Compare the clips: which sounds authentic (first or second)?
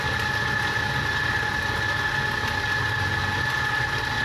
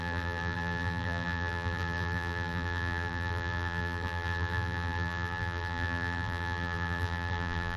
first